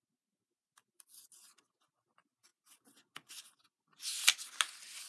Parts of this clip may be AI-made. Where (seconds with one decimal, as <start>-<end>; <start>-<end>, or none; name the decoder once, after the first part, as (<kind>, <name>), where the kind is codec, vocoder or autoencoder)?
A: none